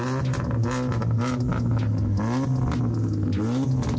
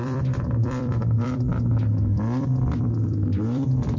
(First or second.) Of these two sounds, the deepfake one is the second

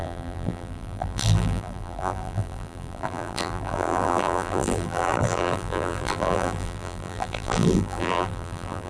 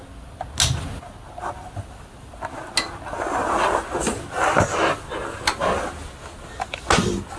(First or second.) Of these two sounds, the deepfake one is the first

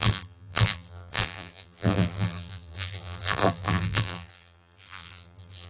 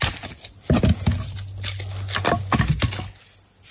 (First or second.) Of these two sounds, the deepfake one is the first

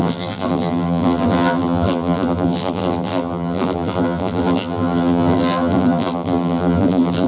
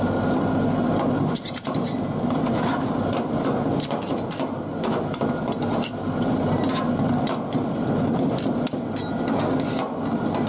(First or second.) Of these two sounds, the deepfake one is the first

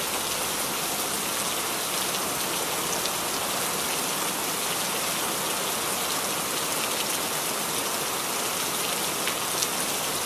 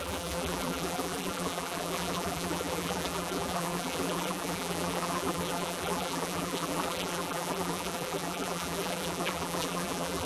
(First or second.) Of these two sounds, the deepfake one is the second